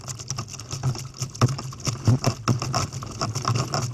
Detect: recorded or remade recorded